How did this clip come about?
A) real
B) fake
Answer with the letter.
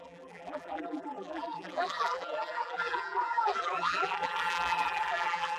B